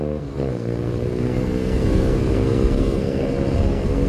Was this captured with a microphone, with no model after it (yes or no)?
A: no